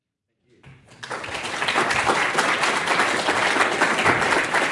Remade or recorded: recorded